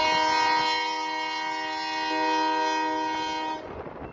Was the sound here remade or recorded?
recorded